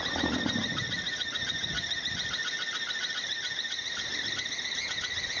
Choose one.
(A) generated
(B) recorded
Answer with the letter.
B